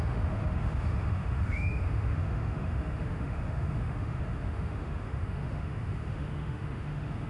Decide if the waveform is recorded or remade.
remade